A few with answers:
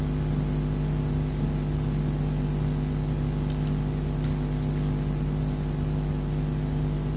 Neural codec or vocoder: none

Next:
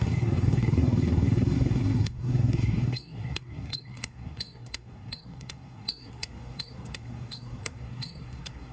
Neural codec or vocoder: codec, SNAC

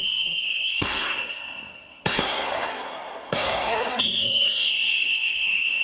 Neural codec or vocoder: codec, SNAC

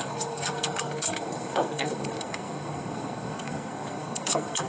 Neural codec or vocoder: codec, SNAC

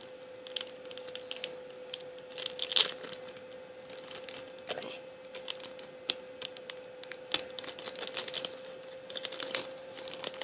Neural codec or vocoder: none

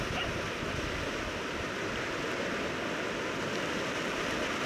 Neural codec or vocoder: none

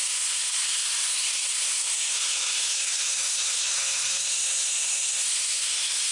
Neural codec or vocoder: codec, SNAC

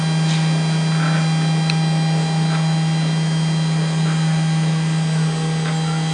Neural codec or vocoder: none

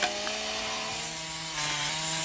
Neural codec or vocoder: none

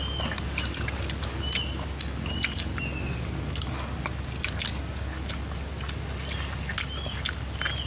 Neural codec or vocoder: none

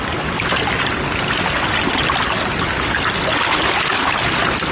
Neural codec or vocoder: none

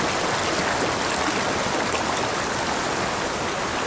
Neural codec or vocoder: none